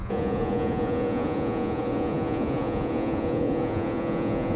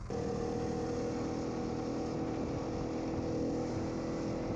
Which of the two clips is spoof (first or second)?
first